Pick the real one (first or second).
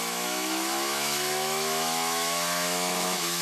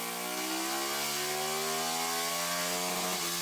second